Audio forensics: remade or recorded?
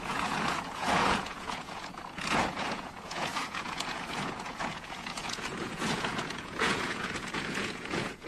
remade